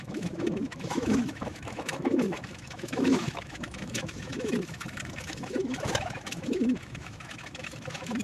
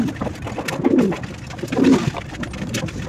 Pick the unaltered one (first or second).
second